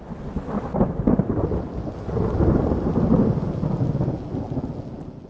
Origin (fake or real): real